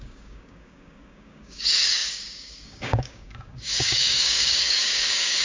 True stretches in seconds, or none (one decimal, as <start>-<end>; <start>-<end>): none

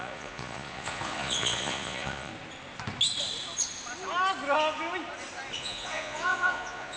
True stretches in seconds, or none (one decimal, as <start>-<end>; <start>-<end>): 2.3-5.6

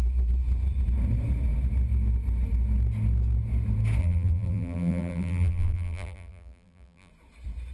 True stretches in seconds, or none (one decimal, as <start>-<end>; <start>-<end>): 0.0-4.0; 7.1-7.7

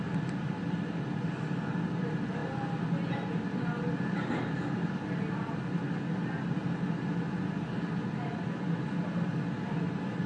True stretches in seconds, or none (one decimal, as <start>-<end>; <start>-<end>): 0.0-10.3